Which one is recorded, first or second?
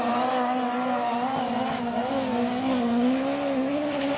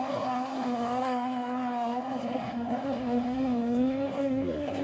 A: first